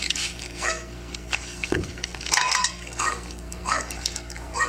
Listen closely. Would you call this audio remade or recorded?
remade